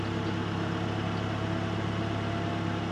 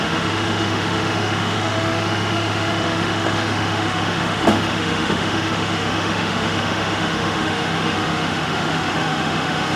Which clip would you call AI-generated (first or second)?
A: second